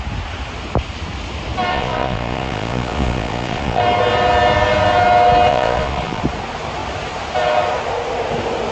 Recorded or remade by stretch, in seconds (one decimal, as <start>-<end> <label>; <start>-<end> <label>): 0.0-1.7 recorded; 1.7-3.8 remade; 3.8-5.5 recorded; 5.5-6.2 remade; 6.2-8.7 recorded